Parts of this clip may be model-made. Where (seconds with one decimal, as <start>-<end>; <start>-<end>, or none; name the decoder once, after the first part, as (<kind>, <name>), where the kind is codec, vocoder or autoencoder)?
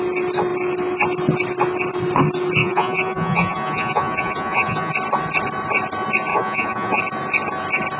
2.6-4.9 (vocoder, Vocos); 6.3-7.0